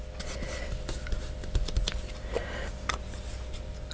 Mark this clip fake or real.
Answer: real